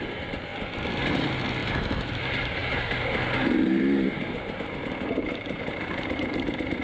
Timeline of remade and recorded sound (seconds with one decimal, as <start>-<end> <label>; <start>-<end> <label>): 0.0-0.5 remade; 0.5-1.0 recorded; 1.0-6.8 remade